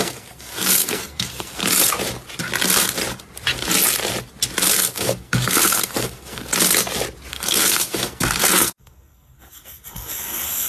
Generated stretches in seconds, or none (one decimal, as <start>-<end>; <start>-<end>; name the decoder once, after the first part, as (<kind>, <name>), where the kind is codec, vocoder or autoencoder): 0.0-1.6 (codec, SNAC); 4.7-6.5; 7.3-10.7